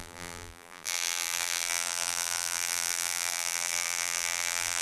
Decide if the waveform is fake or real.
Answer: fake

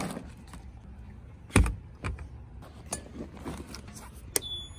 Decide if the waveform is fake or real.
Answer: real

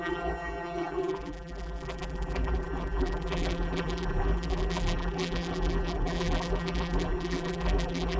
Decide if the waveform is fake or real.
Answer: fake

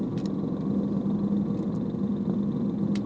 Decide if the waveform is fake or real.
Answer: real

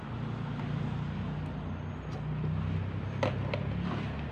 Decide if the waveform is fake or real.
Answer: real